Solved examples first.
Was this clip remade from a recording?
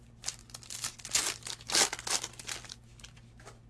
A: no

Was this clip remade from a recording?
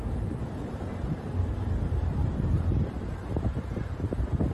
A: yes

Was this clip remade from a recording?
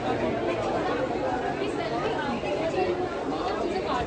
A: no